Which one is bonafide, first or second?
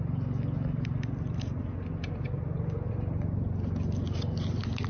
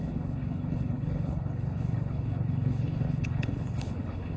first